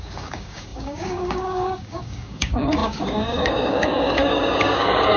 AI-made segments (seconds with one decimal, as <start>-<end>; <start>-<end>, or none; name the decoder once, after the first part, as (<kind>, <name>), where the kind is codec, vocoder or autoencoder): 0.0-5.2 (codec, DAC)